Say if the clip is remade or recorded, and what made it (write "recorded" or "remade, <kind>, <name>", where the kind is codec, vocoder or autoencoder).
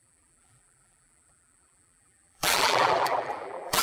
remade, vocoder, BigVGAN v2